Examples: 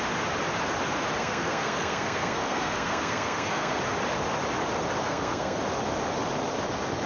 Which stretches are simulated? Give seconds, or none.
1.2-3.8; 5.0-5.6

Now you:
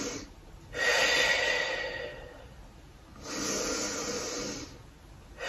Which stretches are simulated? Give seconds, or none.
none

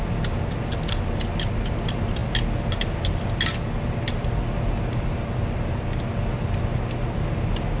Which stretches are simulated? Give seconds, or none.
none

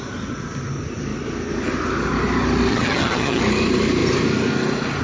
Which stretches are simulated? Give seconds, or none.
2.7-3.4

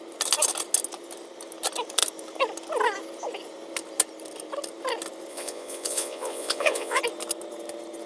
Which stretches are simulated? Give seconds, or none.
5.3-7.0

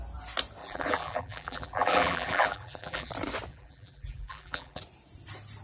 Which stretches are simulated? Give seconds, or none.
0.6-3.1; 3.5-4.8

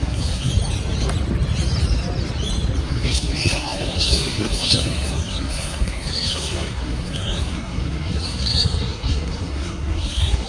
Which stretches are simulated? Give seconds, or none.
0.0-0.5; 2.8-10.5